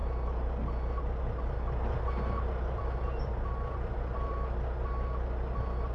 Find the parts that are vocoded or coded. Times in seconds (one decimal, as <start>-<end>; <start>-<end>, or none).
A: none

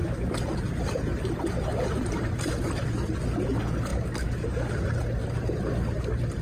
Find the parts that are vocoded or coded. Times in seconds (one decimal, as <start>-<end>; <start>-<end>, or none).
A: 3.9-4.8

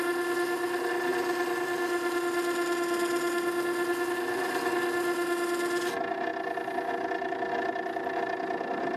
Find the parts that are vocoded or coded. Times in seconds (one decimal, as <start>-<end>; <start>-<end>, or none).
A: none

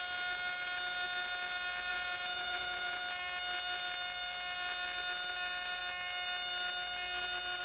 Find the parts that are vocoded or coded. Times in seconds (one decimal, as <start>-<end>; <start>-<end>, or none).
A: 1.9-3.0

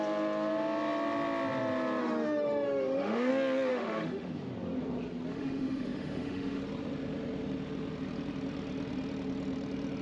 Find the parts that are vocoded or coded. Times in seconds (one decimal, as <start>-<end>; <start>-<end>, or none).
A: 2.0-3.3; 3.7-4.3; 5.3-6.6

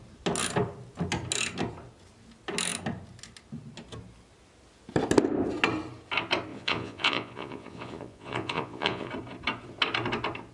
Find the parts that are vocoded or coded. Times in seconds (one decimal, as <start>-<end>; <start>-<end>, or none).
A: 6.5-9.1

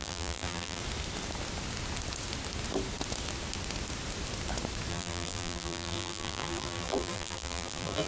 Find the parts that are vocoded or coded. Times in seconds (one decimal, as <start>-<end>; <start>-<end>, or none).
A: 0.0-0.8; 4.9-8.1